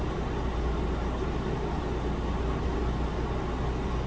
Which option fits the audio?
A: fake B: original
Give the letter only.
B